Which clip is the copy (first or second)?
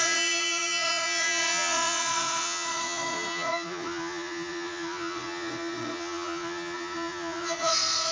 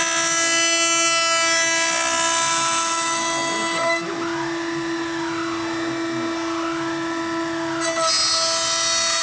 first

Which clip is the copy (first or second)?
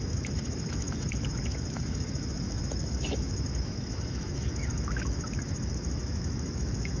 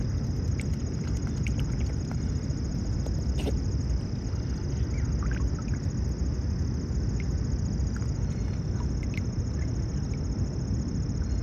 first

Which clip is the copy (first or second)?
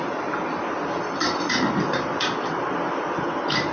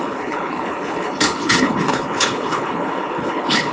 second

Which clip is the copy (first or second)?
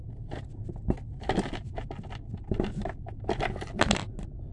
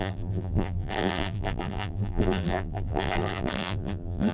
second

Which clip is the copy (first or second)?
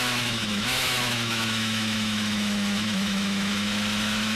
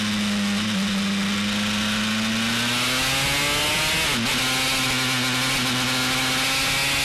first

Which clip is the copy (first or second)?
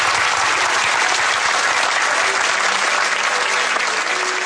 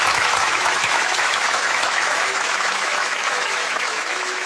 second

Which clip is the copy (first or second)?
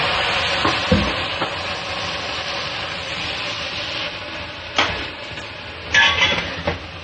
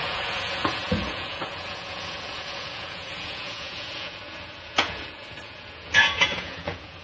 second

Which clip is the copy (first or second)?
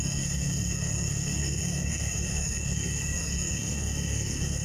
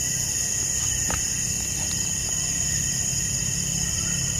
first